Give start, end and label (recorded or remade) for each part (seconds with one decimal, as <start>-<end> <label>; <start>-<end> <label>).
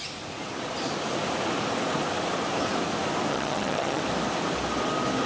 0.0-3.3 recorded; 3.3-4.0 remade; 4.0-5.3 recorded